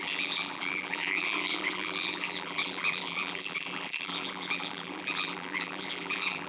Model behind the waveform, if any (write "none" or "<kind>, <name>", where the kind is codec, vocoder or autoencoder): vocoder, BigVGAN v2